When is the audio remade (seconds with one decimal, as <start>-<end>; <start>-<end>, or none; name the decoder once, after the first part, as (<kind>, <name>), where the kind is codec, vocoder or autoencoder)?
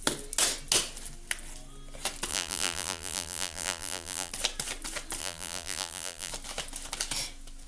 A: 2.3-4.3 (vocoder, BigVGAN v2); 5.2-6.3